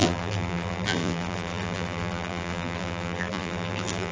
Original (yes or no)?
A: no